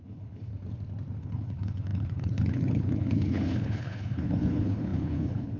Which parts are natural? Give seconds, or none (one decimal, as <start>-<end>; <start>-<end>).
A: 0.5-1.2